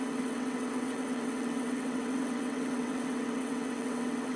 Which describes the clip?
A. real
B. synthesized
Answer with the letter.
B